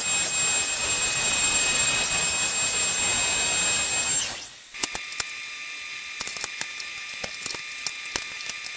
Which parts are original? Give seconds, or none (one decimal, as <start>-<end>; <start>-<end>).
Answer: 0.0-0.8; 2.2-8.8